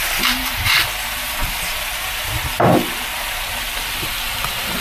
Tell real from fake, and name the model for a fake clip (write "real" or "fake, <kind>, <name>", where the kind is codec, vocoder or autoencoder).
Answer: fake, vocoder, BigVGAN v2